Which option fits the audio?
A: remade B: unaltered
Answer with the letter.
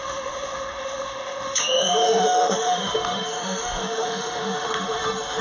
A